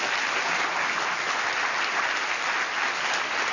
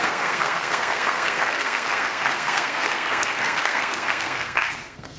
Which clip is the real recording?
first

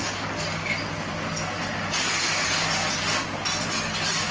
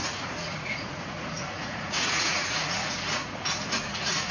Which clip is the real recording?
first